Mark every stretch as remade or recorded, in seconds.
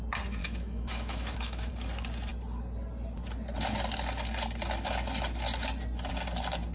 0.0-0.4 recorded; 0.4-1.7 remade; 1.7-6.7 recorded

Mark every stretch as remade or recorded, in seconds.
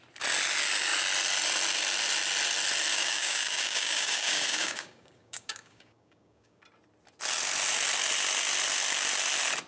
0.0-2.9 recorded; 2.9-6.6 remade; 6.6-9.7 recorded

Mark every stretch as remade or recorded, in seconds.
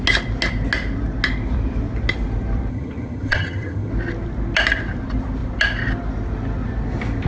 0.0-2.7 recorded; 2.7-3.9 remade; 3.9-7.3 recorded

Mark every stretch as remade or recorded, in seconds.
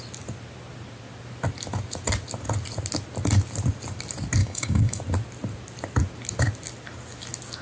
0.0-4.4 recorded; 4.4-5.0 remade; 5.0-7.6 recorded